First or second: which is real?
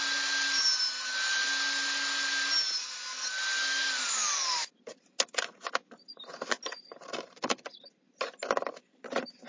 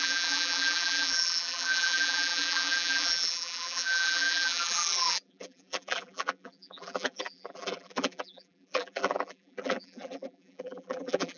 first